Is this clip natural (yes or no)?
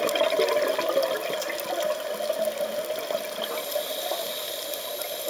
yes